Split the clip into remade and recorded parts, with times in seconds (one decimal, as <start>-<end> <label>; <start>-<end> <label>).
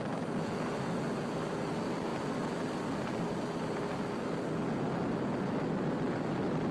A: 0.0-6.7 recorded